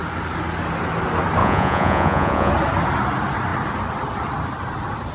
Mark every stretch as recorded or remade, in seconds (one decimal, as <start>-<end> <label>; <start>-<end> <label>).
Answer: 0.0-1.4 recorded; 1.4-2.5 remade; 2.5-5.1 recorded